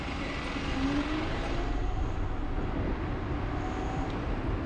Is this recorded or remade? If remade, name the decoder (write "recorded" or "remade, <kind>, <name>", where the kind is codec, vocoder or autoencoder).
recorded